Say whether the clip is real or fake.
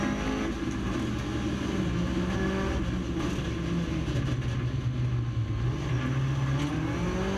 real